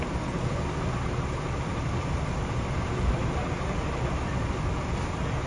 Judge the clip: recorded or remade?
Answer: remade